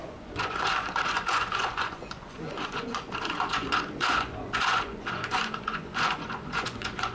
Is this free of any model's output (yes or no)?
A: no